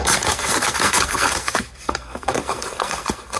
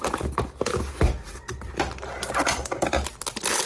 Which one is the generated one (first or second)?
first